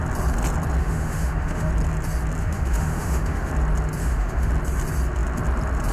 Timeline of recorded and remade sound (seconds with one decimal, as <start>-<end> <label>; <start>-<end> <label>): 0.0-0.8 recorded; 0.8-1.7 remade; 1.7-2.4 recorded; 2.4-3.5 remade; 3.5-4.0 recorded; 4.0-4.5 remade; 4.5-5.9 recorded